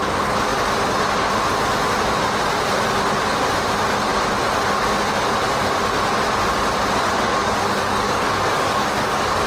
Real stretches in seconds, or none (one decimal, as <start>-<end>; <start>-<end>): 0.0-7.4

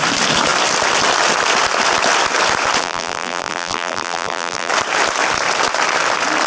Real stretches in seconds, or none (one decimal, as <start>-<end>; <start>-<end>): 0.0-2.8; 4.7-6.5

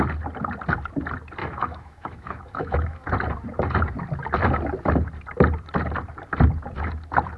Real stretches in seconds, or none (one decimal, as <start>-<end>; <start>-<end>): 0.0-1.4; 3.1-7.4

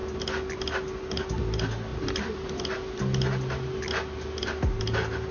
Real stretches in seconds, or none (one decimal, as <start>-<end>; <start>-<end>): 0.0-5.3

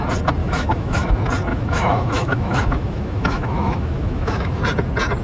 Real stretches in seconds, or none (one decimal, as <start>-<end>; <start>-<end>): 0.0-0.4; 1.1-1.5; 4.6-5.2